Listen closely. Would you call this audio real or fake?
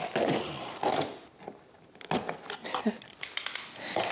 real